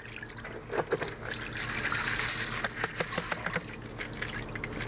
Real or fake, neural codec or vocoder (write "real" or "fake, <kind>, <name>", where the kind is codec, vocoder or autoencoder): real